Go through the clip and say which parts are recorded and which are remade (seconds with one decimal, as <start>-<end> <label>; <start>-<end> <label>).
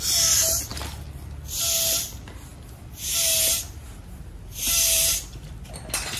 0.0-6.2 recorded